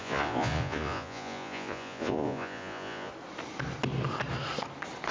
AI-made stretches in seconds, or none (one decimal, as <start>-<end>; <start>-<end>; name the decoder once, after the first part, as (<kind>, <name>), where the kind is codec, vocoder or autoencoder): 0.0-3.1 (vocoder, Vocos)